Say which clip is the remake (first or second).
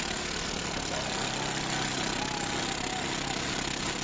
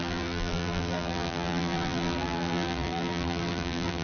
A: second